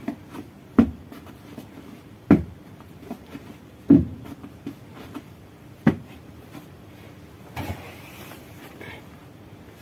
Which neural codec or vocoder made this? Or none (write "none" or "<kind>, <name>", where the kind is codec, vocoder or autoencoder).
vocoder, BigVGAN v2